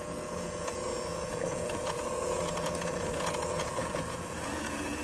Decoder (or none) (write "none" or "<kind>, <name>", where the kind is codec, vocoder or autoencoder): vocoder, Vocos